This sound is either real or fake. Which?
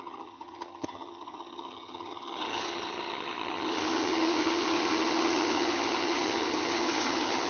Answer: fake